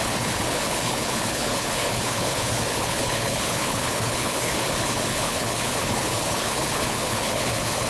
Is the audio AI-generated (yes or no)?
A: yes